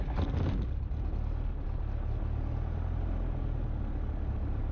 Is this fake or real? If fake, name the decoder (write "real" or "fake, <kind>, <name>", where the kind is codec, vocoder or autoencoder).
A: real